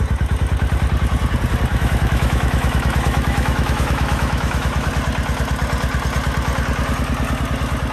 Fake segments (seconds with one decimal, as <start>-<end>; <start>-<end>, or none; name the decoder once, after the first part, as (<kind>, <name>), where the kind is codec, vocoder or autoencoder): 1.7-4.9 (autoencoder, DAC-VAE)